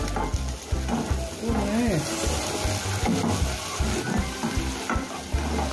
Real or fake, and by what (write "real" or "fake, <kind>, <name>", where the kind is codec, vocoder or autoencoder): real